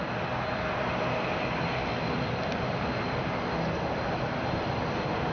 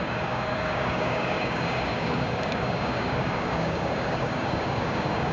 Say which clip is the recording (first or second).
first